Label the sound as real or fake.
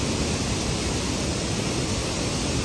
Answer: real